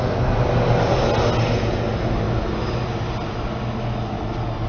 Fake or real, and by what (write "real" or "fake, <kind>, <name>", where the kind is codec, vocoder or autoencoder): real